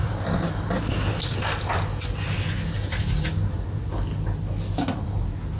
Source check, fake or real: real